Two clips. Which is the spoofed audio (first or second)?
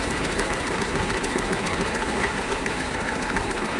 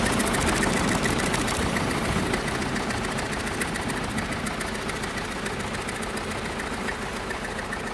first